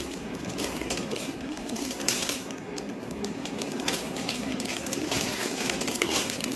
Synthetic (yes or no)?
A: yes